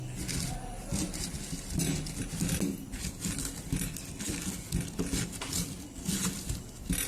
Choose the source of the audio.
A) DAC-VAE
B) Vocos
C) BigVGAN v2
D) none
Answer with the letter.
D